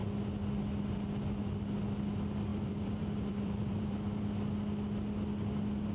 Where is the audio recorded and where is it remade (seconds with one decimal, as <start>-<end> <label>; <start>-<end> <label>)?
0.0-2.5 recorded; 2.5-4.3 remade; 4.3-5.9 recorded